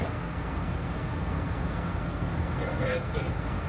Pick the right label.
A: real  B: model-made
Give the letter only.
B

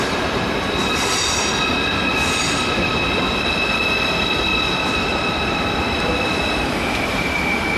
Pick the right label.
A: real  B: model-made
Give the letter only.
B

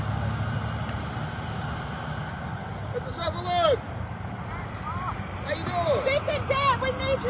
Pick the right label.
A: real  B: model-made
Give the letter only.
A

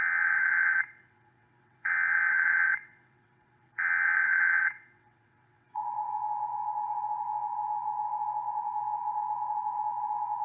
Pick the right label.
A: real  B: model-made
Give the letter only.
B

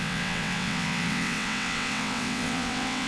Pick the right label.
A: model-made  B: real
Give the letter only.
A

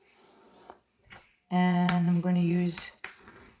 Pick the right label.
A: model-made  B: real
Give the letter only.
A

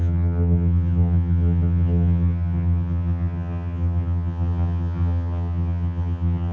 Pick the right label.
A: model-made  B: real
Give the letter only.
A